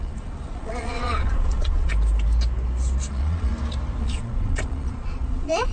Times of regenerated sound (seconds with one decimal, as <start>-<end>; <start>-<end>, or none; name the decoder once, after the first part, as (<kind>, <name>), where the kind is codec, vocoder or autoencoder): 0.0-1.9 (vocoder, Vocos); 3.1-3.5; 4.0-5.7